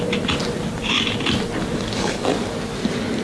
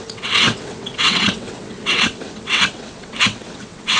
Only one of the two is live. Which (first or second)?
first